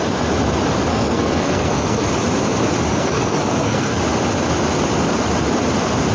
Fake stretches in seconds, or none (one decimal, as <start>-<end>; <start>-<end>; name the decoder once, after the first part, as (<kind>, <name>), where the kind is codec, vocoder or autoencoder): 0.9-2.1 (codec, SNAC); 2.9-4.0